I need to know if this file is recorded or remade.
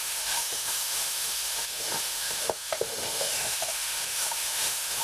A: remade